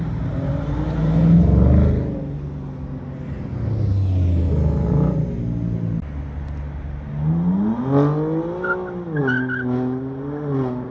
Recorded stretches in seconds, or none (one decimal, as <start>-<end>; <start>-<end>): 0.0-10.9